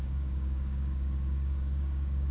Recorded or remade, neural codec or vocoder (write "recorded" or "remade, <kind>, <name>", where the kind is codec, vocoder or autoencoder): remade, codec, DAC